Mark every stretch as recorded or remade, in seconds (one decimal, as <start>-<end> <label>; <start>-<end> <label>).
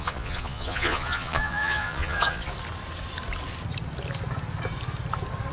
0.0-2.5 remade; 2.5-5.5 recorded